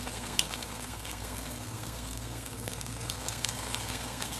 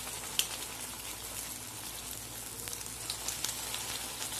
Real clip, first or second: second